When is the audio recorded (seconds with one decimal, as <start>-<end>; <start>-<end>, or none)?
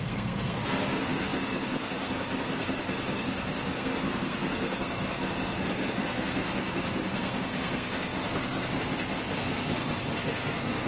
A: none